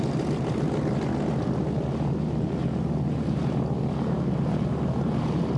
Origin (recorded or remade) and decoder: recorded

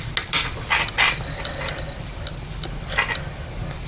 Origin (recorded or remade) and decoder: recorded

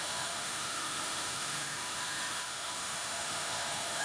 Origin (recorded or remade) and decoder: remade, autoencoder, DAC-VAE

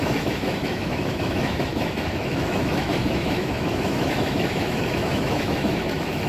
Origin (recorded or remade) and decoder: remade, autoencoder, DAC-VAE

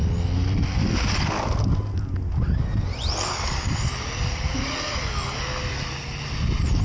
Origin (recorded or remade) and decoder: recorded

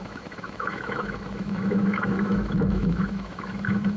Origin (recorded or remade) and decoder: remade, autoencoder, DAC-VAE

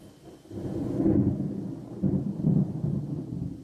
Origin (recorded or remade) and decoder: recorded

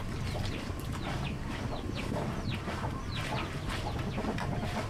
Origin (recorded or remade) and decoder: recorded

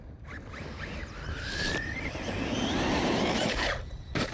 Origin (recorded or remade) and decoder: recorded